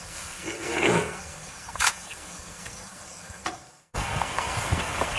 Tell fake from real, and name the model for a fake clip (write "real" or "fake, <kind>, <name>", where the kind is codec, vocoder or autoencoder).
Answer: fake, codec, SNAC